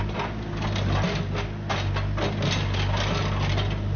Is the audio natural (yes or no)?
yes